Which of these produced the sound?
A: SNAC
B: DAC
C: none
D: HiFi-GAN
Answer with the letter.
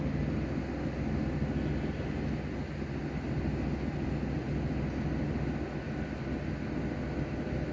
C